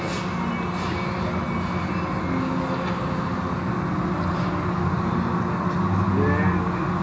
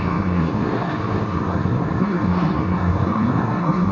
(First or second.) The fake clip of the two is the second